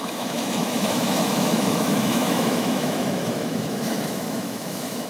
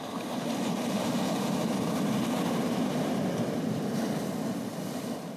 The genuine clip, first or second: second